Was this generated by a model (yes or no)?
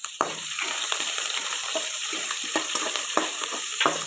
yes